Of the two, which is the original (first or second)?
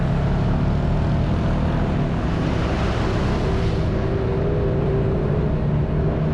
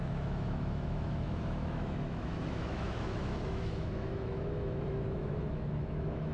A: first